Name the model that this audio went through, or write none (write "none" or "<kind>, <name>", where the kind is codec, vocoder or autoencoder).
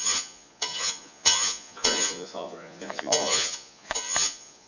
vocoder, Vocos